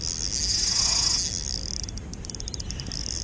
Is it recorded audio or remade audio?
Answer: recorded